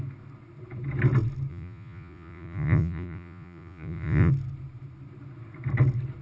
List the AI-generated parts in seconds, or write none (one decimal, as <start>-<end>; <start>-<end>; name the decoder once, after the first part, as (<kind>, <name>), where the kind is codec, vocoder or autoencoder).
1.5-4.3 (vocoder, Vocos)